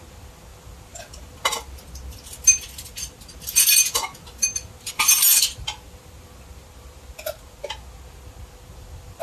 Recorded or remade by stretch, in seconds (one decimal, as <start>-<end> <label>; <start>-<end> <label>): 0.0-9.2 recorded